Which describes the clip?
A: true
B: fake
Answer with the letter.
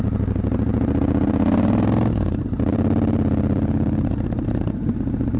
B